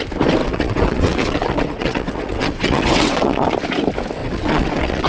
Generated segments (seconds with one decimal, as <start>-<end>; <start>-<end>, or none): 0.4-3.5; 4.2-5.1